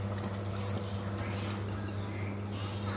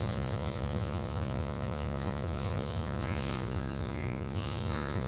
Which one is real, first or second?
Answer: first